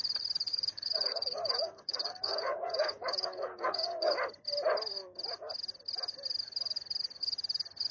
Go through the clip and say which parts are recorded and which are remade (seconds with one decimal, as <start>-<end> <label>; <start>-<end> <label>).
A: 0.0-0.5 recorded; 0.5-4.1 remade; 4.1-7.9 recorded